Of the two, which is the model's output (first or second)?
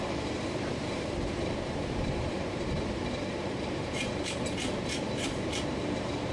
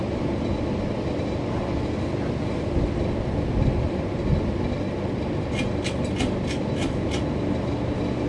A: first